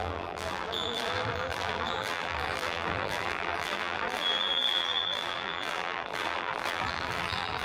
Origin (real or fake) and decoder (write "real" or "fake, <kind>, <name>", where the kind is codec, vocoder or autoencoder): fake, vocoder, BigVGAN v2